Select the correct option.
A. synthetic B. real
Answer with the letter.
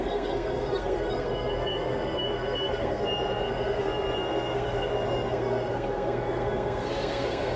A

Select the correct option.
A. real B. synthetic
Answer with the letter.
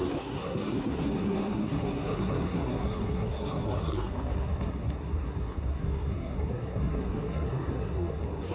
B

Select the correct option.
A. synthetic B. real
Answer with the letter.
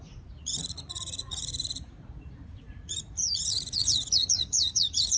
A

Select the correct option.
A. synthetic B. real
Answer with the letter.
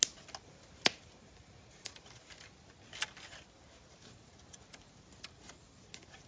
B